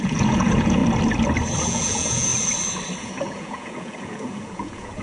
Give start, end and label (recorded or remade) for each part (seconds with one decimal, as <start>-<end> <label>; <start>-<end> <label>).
0.0-0.8 remade; 0.8-1.6 recorded; 1.6-2.3 remade; 2.3-3.0 recorded; 3.0-5.0 remade